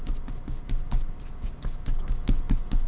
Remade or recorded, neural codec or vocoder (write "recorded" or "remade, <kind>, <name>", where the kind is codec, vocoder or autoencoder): recorded